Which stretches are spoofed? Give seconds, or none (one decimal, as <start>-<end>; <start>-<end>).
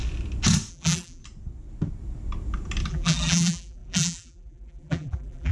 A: 0.7-1.2; 2.9-5.5